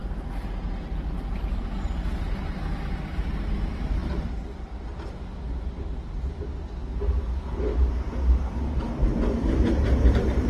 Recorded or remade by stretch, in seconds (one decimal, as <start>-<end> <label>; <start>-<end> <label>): 0.0-10.5 recorded